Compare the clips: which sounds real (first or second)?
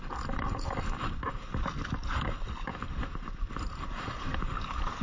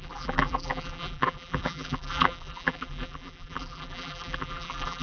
first